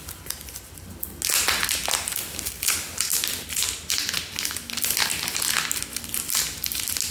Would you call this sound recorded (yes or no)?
yes